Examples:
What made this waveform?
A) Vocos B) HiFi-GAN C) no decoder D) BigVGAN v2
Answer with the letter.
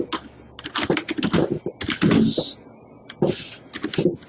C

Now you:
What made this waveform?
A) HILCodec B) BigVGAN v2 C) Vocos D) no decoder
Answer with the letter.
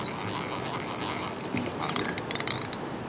D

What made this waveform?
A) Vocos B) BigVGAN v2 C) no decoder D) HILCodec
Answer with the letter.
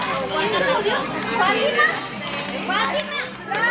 C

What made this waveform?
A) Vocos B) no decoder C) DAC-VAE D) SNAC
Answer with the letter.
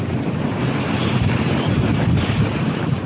B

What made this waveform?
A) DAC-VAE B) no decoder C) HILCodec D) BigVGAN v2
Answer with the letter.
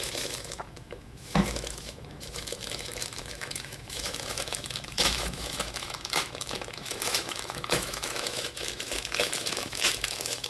A